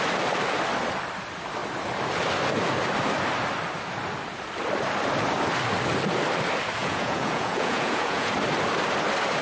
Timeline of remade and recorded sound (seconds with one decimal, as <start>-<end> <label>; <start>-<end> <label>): 0.0-6.8 recorded; 6.8-8.3 remade; 8.3-9.4 recorded